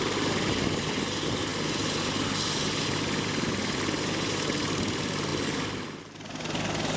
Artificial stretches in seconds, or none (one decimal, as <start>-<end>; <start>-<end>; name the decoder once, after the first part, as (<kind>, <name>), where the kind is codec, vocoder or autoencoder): none